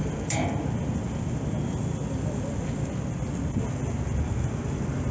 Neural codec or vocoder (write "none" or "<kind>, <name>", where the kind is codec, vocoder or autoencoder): none